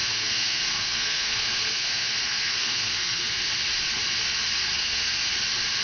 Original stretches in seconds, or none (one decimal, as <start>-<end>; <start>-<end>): 3.5-4.8; 5.3-5.8

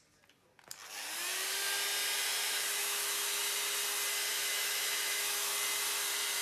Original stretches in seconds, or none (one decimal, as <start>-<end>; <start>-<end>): 0.0-2.8; 3.4-4.3; 5.5-6.4

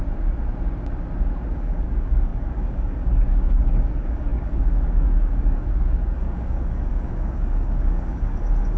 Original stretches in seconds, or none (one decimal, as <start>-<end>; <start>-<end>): 0.0-1.5

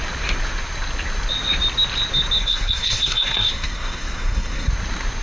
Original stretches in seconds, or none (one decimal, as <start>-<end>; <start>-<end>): 0.0-2.4; 4.7-5.2

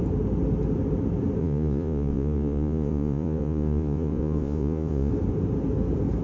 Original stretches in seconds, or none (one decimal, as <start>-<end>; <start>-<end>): 0.0-1.4; 5.1-6.2

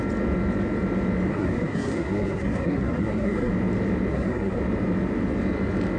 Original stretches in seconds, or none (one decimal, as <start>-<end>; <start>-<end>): 0.0-1.3; 3.5-4.1; 4.6-6.0